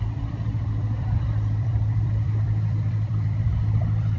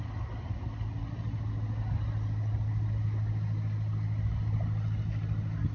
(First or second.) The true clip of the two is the second